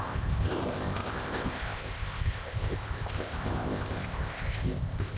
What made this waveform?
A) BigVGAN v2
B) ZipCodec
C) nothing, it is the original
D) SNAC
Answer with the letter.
B